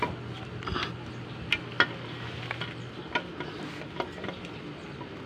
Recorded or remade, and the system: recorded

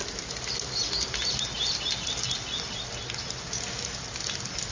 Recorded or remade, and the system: recorded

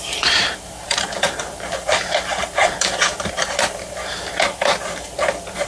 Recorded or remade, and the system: remade, vocoder, BigVGAN v2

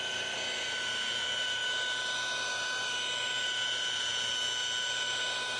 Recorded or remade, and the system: recorded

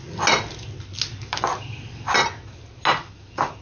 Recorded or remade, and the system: recorded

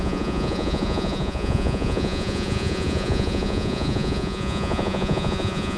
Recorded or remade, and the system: remade, vocoder, Vocos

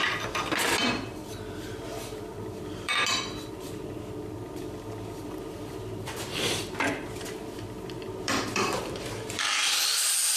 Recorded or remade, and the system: remade, vocoder, BigVGAN v2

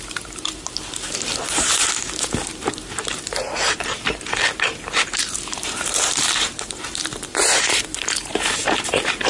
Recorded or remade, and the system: remade, vocoder, BigVGAN v2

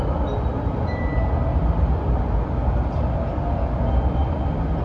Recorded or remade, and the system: recorded